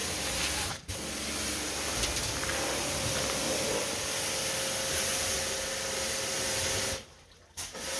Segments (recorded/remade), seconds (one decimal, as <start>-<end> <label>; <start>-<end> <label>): 0.0-8.0 recorded